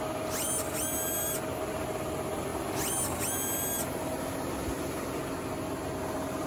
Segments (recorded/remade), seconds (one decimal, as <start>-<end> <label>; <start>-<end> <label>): 0.0-6.5 recorded